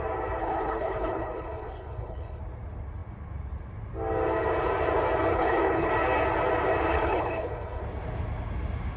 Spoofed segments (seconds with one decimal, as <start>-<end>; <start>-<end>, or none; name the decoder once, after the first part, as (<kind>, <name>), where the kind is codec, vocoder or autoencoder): 0.4-2.4 (codec, HILCodec); 5.3-5.9; 6.9-7.8